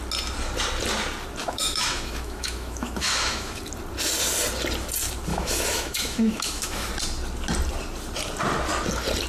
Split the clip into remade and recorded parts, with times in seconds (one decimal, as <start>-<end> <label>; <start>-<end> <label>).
0.0-1.4 recorded; 1.4-3.6 remade; 3.6-5.3 recorded; 5.3-6.9 remade; 6.9-9.3 recorded